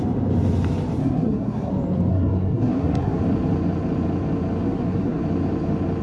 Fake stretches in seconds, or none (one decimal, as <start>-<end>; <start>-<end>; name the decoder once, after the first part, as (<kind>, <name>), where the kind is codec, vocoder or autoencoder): 1.0-1.7 (codec, SNAC); 2.1-3.2; 4.6-5.2